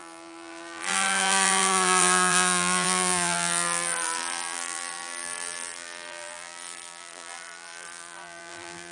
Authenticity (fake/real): fake